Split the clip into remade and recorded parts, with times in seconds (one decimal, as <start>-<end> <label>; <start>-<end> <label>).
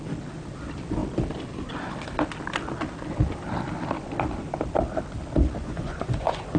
0.0-5.6 recorded; 5.6-6.6 remade